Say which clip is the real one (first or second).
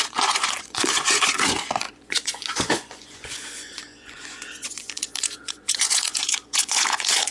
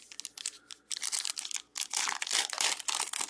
second